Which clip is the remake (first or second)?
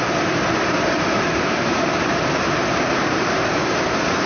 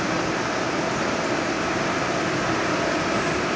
first